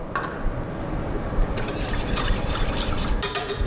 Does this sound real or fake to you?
real